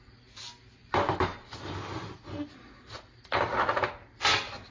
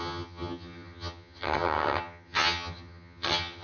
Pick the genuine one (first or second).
first